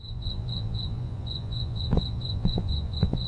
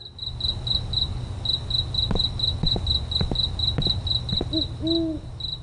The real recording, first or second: second